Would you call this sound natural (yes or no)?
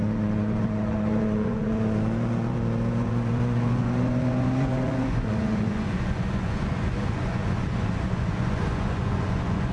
no